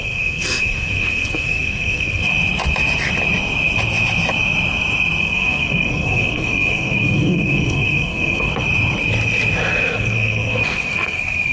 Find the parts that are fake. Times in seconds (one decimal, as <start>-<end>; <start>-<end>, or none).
0.0-2.3; 5.2-8.5; 9.7-11.5